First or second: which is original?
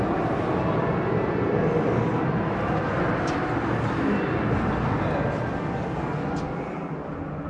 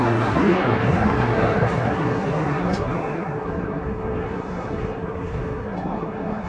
first